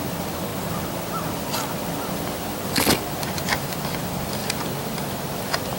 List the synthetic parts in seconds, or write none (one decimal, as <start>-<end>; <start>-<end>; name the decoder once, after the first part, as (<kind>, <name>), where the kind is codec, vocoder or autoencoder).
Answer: none